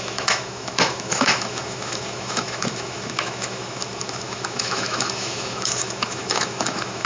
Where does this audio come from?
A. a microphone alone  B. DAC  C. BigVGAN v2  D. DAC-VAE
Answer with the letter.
D